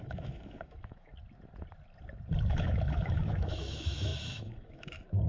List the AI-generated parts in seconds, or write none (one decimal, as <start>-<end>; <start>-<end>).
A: 0.0-1.1; 2.5-5.3